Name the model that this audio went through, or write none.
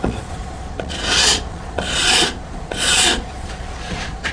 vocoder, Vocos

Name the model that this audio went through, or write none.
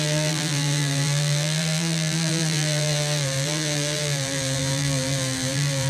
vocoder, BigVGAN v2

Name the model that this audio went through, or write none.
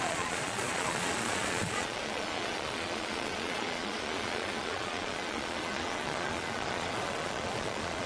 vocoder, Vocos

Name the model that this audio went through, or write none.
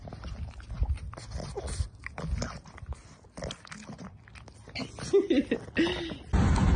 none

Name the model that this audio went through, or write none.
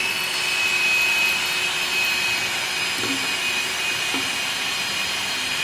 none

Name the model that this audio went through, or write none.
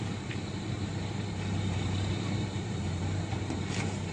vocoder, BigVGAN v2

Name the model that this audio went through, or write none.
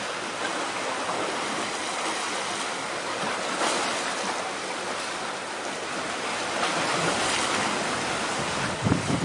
none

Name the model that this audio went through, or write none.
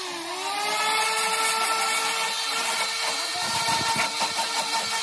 none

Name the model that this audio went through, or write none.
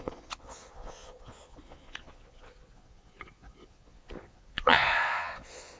vocoder, Vocos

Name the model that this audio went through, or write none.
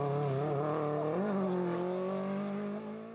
none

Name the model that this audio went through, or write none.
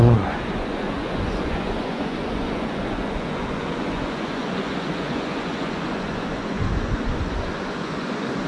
vocoder, Vocos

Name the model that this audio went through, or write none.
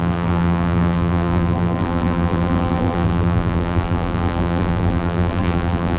vocoder, BigVGAN v2